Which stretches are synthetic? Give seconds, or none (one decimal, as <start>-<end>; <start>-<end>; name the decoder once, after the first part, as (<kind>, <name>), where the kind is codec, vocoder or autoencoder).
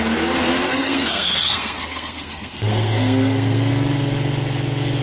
0.7-3.7 (codec, SNAC)